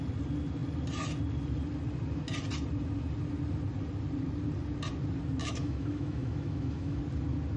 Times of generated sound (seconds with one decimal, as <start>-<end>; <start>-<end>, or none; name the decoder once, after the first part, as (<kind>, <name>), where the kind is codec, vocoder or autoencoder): 5.4-7.0 (autoencoder, DAC-VAE)